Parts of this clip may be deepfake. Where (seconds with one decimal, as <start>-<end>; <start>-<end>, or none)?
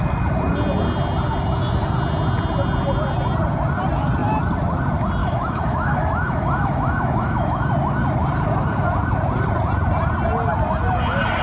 5.2-7.7